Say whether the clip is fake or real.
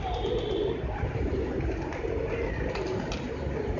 real